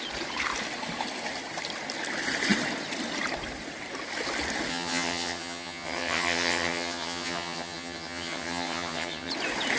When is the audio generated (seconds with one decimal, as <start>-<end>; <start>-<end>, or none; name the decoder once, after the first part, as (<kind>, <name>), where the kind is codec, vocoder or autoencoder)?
4.7-9.3 (vocoder, HiFi-GAN)